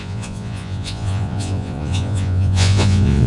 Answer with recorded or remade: remade